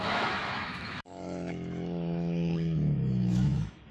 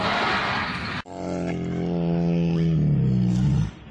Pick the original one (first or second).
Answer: second